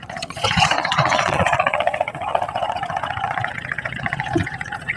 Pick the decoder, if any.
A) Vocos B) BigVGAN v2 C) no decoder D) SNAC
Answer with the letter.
A